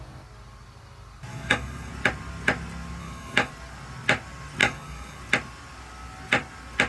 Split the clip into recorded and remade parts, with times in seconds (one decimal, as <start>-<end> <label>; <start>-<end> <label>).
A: 0.0-1.3 recorded; 1.3-1.9 remade; 1.9-3.0 recorded; 3.0-3.5 remade; 3.5-4.6 recorded; 4.6-5.2 remade; 5.2-6.9 recorded